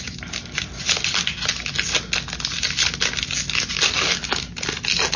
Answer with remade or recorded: recorded